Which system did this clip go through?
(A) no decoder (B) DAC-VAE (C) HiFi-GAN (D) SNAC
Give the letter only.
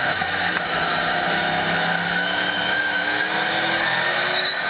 B